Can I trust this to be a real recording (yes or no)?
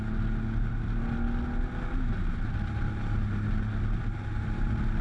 yes